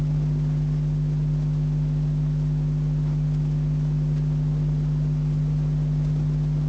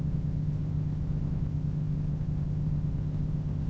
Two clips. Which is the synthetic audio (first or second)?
second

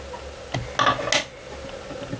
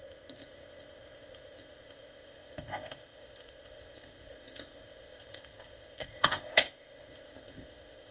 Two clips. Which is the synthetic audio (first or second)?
second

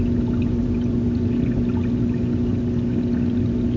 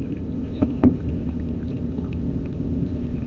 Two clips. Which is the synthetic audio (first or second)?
second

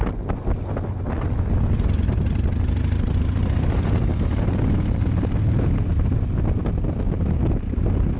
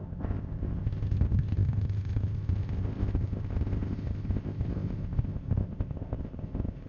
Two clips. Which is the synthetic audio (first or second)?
second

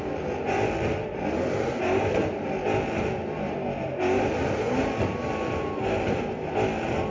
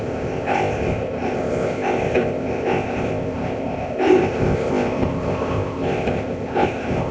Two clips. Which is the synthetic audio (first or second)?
second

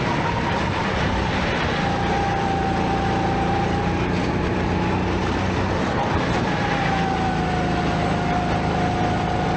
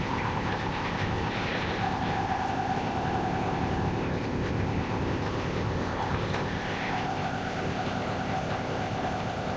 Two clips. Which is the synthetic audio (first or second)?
second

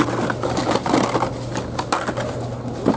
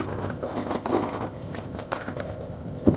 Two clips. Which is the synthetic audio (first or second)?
second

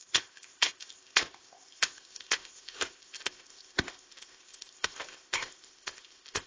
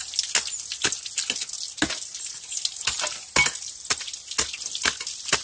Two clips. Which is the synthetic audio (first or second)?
first